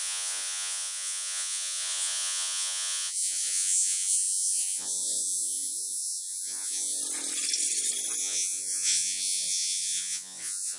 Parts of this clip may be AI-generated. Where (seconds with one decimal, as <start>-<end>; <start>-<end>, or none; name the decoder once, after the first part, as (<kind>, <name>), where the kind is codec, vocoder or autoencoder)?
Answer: 0.0-7.0 (vocoder, Vocos); 8.2-10.8